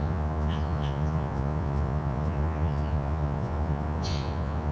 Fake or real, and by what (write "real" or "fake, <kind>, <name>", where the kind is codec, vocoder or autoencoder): fake, vocoder, Vocos